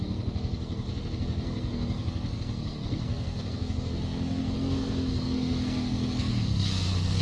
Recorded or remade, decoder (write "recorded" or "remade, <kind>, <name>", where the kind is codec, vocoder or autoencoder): remade, codec, SNAC